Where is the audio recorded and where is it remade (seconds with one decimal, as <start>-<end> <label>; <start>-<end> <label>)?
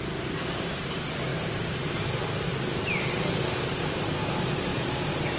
0.0-1.3 recorded; 1.3-3.8 remade; 3.8-4.7 recorded; 4.7-5.4 remade